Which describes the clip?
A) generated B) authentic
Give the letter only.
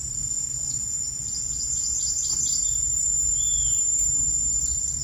B